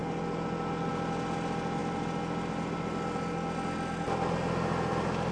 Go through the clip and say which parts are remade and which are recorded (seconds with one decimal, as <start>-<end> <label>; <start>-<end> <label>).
0.0-5.3 recorded